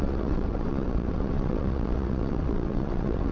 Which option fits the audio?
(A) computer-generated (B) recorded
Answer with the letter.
A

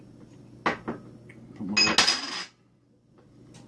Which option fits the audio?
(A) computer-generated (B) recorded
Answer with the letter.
B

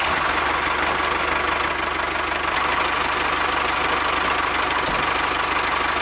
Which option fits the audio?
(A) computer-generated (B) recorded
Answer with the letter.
B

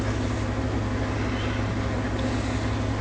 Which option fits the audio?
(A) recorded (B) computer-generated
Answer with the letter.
A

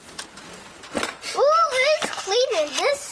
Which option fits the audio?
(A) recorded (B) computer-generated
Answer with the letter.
A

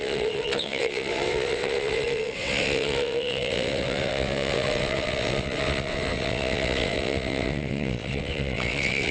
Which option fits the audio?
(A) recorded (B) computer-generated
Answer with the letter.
B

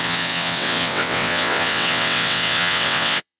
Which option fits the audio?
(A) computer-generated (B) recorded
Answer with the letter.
A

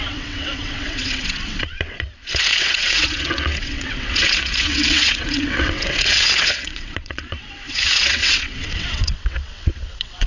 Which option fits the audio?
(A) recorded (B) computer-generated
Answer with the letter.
B